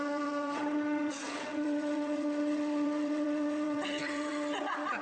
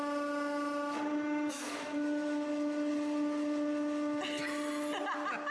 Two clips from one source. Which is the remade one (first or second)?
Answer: first